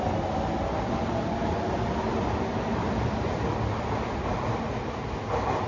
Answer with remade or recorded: recorded